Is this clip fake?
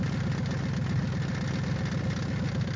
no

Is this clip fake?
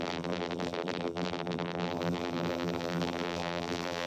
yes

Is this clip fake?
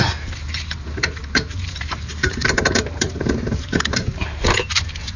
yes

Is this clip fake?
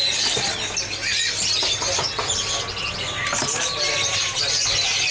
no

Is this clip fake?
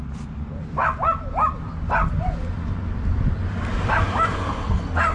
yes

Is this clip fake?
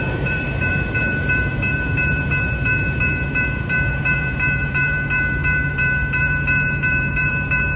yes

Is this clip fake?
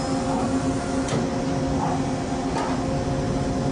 no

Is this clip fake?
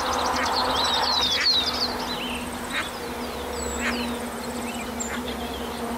no